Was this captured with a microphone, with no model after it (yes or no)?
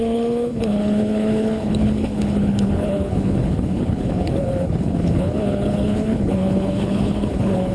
no